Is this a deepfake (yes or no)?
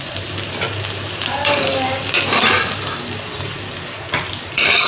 yes